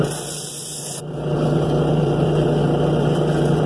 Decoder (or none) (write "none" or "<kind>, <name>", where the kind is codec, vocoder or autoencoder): none